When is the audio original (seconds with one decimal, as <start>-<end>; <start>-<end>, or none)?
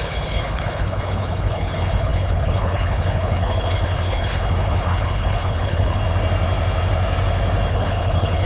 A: 6.0-7.7